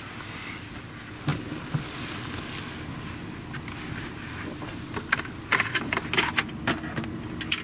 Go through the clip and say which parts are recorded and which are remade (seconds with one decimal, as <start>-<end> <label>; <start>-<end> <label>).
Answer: 0.0-7.6 recorded